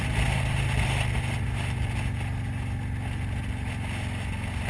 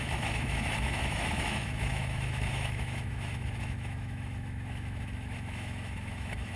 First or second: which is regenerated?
second